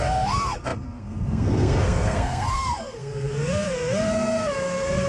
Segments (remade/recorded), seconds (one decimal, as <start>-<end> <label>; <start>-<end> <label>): 0.0-5.1 remade